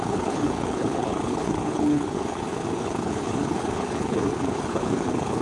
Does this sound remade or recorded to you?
remade